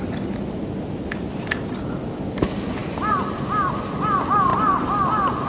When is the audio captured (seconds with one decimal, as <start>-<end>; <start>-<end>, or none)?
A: 0.0-5.5